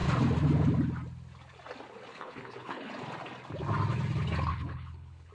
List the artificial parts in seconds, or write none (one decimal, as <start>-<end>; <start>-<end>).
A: 2.1-2.9; 4.5-5.3